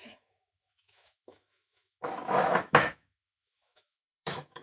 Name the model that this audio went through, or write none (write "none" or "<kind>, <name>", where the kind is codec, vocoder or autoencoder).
autoencoder, DAC-VAE